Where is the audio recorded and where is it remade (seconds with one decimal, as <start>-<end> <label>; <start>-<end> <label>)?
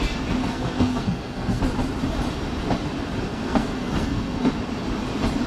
0.0-0.4 recorded; 0.4-1.6 remade; 1.6-3.3 recorded; 3.3-4.5 remade; 4.5-5.5 recorded